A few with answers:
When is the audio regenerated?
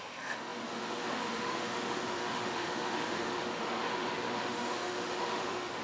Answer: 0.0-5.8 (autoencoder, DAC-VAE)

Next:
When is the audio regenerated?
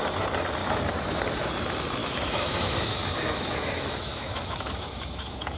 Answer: 0.6-1.2 (autoencoder, DAC-VAE); 2.0-5.6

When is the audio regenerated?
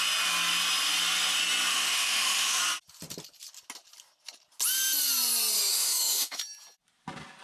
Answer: 1.7-2.6 (autoencoder, DAC-VAE); 5.7-6.4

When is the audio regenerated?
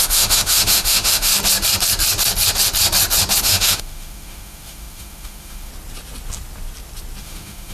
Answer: 0.0-1.3 (autoencoder, DAC-VAE); 3.4-5.7; 7.2-7.7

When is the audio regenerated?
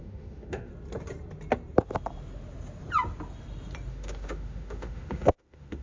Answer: 0.0-0.7 (autoencoder, DAC-VAE); 3.9-5.8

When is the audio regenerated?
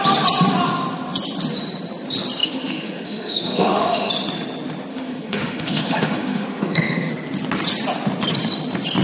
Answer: 2.4-4.1 (autoencoder, DAC-VAE); 4.9-7.1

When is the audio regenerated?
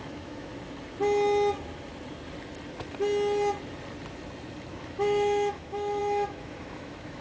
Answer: 0.0-0.5 (autoencoder, DAC-VAE); 4.7-7.2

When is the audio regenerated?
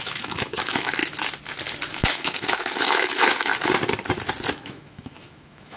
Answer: 0.0-1.0 (autoencoder, DAC-VAE); 1.9-3.5; 4.5-5.8